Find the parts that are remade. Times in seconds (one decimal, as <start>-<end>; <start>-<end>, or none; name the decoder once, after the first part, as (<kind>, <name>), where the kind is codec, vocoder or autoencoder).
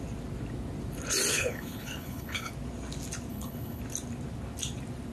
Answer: 1.3-2.5 (codec, HILCodec); 3.3-3.8